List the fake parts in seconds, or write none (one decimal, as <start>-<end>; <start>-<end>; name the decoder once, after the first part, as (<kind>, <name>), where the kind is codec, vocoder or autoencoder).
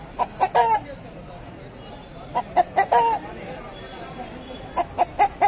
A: none